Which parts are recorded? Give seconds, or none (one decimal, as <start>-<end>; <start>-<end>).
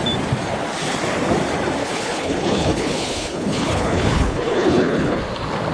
0.0-1.8; 5.2-5.7